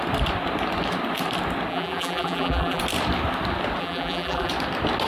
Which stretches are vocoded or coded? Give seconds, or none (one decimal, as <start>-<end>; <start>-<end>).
1.7-2.8; 3.8-4.5